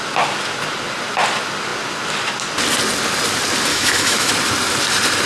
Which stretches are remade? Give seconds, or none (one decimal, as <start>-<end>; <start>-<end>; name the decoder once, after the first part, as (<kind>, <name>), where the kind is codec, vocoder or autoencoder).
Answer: 3.7-4.3 (autoencoder, DAC-VAE)